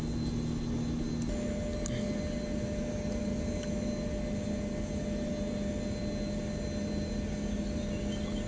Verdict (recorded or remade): recorded